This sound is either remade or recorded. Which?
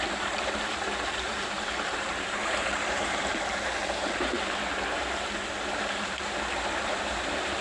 remade